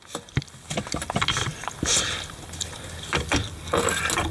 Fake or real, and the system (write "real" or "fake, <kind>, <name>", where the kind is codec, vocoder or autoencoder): real